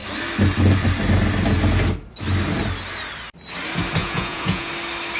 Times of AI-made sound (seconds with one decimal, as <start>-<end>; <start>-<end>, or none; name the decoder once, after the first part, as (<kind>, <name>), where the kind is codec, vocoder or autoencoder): 4.0-4.7 (vocoder, Vocos)